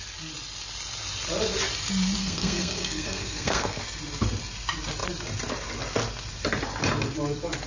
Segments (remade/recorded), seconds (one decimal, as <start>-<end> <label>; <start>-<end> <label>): 0.0-2.2 recorded; 2.2-3.8 remade; 3.8-7.7 recorded